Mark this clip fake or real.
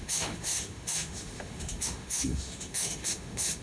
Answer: fake